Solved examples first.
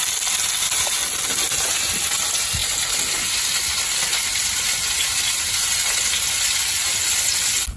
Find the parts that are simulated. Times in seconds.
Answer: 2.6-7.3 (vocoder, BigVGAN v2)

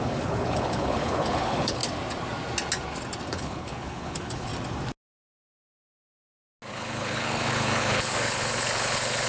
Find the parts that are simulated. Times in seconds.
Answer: 0.0-1.8 (codec, HILCodec); 3.3-4.5; 6.7-9.3